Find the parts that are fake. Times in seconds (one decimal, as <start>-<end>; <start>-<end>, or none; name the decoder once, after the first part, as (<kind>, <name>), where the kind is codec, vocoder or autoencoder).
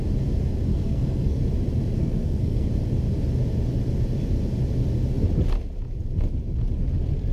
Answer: 0.7-1.4 (codec, SNAC); 2.0-2.7